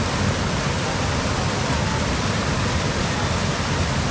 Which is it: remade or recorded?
recorded